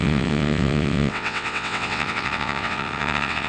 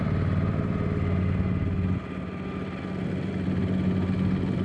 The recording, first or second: second